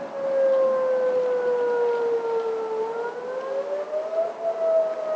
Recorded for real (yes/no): yes